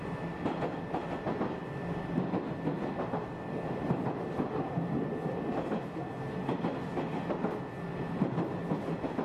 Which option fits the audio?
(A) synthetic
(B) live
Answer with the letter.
B